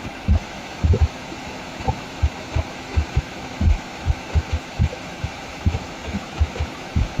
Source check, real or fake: fake